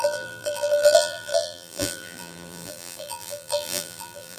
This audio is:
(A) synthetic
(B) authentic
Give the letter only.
A